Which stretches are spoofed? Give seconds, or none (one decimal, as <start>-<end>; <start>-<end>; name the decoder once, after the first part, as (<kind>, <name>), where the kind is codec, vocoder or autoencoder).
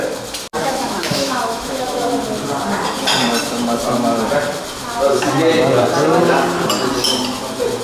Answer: 0.6-2.1 (autoencoder, DAC-VAE)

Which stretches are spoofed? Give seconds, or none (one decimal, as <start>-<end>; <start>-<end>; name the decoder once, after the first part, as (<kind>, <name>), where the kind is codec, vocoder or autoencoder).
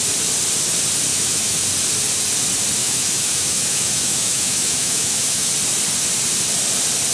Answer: 1.1-1.6 (autoencoder, DAC-VAE); 2.8-5.5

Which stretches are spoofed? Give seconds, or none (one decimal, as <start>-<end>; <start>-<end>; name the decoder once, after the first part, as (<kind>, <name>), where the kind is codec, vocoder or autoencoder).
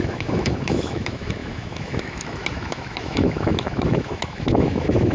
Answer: 0.0-5.1 (autoencoder, DAC-VAE)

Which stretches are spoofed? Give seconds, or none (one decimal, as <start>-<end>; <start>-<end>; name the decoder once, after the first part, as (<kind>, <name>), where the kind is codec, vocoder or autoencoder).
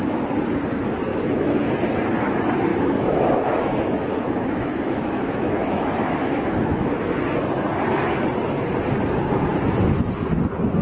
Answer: 1.1-1.6 (autoencoder, DAC-VAE); 2.7-7.2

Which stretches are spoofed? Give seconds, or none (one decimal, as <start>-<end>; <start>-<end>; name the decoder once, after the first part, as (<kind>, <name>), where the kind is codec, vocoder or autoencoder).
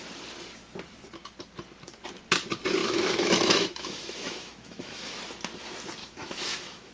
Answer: 2.8-5.2 (autoencoder, DAC-VAE); 6.0-6.9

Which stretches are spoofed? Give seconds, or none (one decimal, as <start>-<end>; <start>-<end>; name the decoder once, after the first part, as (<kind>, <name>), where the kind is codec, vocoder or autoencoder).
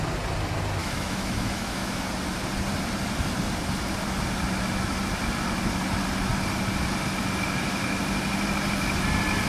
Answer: 0.8-2.0 (autoencoder, DAC-VAE)